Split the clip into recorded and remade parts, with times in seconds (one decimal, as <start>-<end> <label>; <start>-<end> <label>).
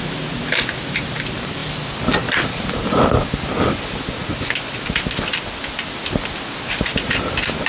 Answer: 0.0-7.7 recorded